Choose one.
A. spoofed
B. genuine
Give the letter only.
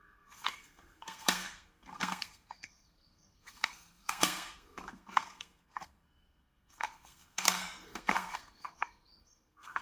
A